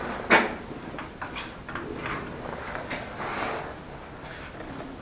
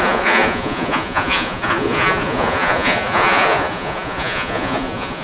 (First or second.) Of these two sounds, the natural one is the first